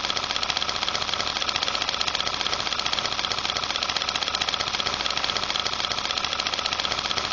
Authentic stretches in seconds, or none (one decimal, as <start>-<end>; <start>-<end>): 0.0-7.3